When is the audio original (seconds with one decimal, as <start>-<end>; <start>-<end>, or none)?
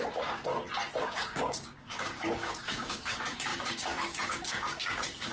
0.5-1.0